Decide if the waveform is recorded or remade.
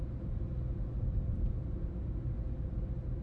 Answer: recorded